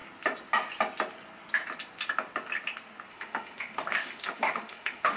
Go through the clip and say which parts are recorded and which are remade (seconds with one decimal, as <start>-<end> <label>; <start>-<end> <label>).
0.0-3.1 recorded; 3.1-5.2 remade